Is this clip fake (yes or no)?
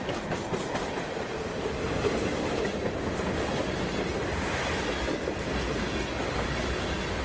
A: no